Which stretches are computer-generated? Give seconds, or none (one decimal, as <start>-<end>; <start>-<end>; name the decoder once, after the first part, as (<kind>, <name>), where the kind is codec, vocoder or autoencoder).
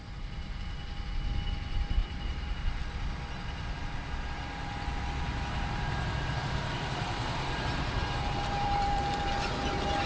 2.0-2.8 (vocoder, BigVGAN v2); 5.3-9.3